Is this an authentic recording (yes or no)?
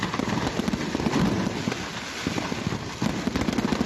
yes